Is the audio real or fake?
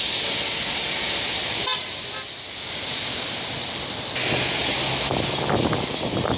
real